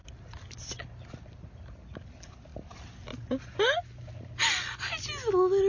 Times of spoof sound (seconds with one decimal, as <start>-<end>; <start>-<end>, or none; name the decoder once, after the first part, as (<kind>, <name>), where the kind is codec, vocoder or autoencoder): none